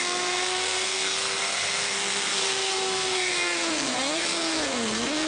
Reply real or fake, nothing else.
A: fake